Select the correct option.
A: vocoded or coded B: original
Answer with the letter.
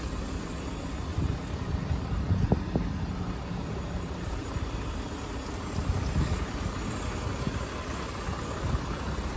B